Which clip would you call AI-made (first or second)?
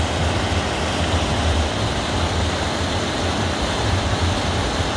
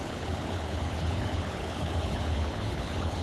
second